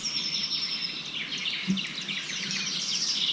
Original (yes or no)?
yes